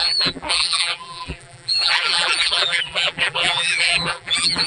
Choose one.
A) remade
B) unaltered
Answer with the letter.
A